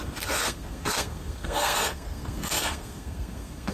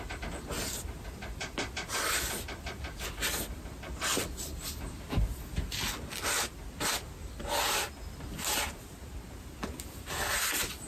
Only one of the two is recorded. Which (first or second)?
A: second